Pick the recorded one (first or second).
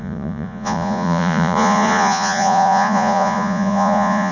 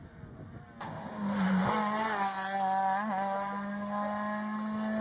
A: second